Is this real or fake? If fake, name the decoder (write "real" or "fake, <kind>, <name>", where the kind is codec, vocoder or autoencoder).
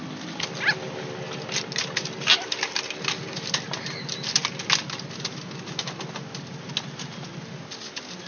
real